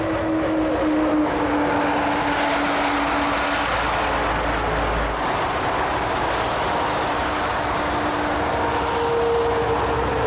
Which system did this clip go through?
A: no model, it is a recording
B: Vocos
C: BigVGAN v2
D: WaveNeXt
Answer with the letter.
A